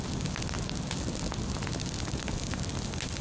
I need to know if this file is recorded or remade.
recorded